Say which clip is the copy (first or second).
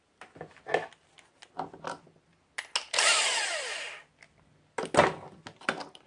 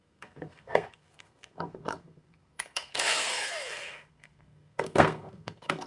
second